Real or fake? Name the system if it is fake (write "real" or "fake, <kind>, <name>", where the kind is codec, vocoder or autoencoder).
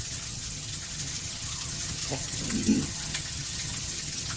fake, vocoder, HiFi-GAN